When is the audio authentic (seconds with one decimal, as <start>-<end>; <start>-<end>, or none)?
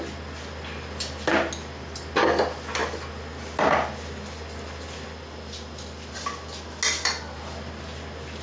0.0-8.4